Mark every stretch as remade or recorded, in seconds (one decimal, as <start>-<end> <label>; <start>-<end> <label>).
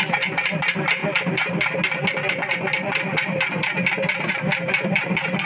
0.0-5.5 recorded